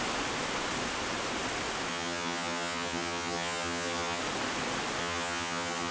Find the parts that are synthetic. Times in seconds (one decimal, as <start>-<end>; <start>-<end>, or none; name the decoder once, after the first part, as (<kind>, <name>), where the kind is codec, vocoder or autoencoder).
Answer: 1.9-4.2 (vocoder, HiFi-GAN); 5.0-5.9